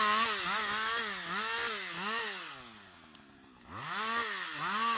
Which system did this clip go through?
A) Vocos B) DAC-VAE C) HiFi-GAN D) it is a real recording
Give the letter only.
D